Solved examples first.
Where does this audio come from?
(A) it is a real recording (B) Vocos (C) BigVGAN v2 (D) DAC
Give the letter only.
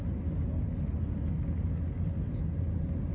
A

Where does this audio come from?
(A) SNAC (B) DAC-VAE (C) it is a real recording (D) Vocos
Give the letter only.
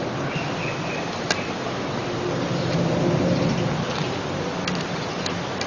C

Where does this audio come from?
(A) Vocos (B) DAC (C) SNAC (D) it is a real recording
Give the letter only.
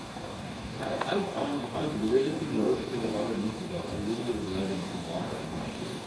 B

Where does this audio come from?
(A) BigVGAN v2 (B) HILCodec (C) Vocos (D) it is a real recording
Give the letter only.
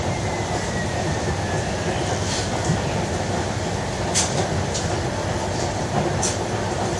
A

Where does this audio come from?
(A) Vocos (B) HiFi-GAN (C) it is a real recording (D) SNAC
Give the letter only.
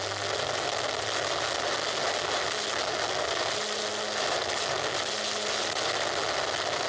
C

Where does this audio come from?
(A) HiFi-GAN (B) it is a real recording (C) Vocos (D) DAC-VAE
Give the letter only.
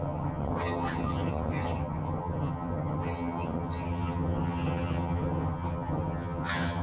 A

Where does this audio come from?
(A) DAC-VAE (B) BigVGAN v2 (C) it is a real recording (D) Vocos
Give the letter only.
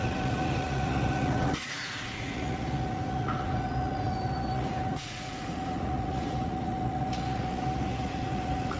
D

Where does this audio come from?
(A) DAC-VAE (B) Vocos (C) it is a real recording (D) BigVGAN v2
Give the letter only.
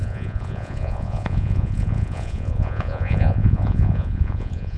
B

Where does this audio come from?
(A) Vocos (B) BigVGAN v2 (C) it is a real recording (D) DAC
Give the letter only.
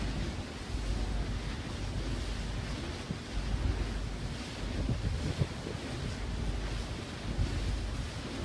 C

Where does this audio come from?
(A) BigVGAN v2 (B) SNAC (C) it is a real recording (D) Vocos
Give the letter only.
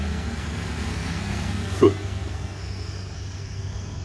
B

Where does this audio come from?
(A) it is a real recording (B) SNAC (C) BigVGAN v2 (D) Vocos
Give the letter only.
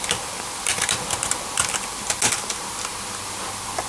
A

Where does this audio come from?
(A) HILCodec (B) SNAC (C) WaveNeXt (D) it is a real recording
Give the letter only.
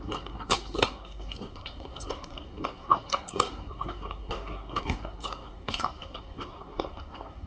B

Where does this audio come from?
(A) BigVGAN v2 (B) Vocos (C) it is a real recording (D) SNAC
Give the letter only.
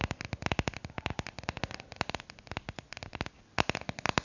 C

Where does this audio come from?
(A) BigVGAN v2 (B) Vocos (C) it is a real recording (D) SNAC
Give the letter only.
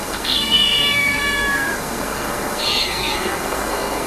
D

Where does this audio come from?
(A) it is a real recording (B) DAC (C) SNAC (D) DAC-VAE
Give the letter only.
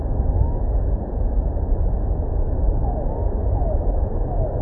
A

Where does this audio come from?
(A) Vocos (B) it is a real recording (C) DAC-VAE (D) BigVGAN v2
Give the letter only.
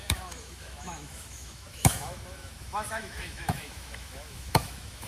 C